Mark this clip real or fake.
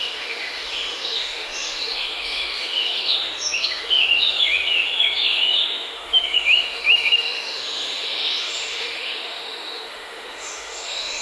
fake